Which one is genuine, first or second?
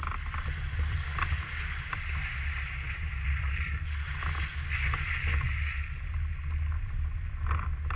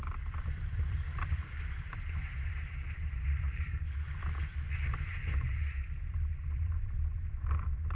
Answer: first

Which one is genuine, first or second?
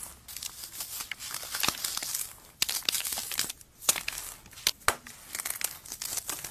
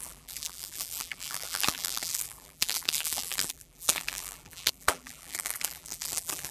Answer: first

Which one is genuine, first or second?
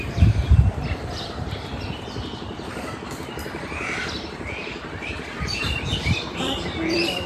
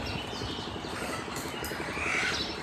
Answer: second